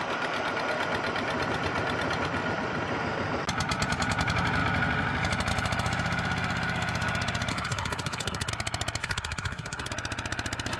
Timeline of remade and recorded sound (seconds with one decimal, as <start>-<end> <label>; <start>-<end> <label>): 0.0-7.5 recorded; 7.5-8.5 remade; 8.5-9.0 recorded; 9.0-9.9 remade; 9.9-10.8 recorded